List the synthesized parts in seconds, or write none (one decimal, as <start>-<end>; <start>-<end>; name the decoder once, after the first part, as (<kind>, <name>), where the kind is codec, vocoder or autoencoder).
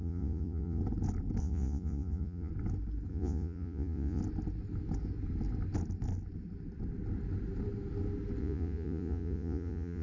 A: 0.0-0.8 (vocoder, Vocos); 1.4-2.5; 3.1-4.2; 8.4-10.0